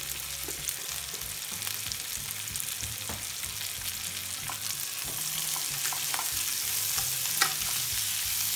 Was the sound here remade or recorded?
recorded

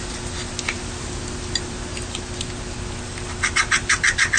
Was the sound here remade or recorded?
recorded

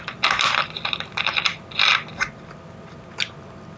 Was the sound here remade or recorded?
recorded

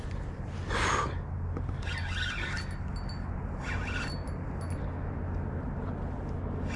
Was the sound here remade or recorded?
recorded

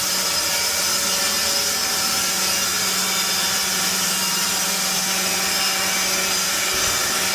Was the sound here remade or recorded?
recorded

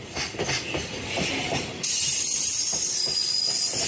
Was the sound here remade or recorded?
recorded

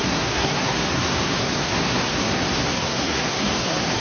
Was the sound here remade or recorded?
remade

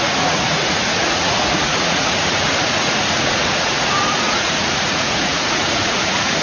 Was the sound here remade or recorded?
remade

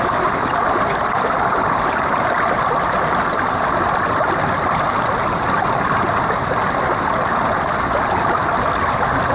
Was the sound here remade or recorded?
recorded